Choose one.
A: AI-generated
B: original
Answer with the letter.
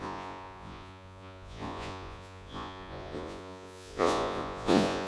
A